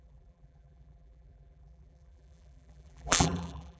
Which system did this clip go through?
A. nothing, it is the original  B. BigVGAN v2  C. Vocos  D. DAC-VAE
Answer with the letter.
B